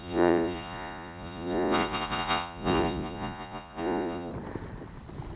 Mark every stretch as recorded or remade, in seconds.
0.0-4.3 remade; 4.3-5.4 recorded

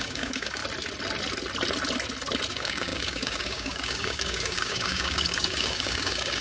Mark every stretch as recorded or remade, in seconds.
0.0-0.6 remade; 0.6-2.5 recorded; 2.5-6.4 remade

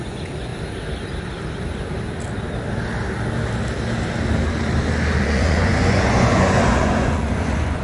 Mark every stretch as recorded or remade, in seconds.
0.0-0.5 remade; 0.5-5.2 recorded; 5.2-7.8 remade